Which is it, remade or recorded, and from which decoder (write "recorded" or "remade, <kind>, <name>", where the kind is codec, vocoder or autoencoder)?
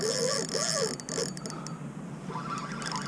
recorded